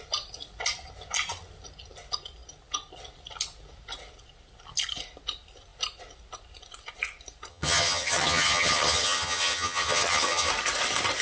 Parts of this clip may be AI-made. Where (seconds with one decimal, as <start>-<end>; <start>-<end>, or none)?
7.5-10.5